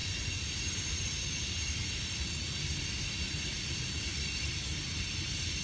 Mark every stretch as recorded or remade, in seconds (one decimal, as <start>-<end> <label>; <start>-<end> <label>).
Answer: 0.0-3.4 remade; 3.4-4.1 recorded; 4.1-5.6 remade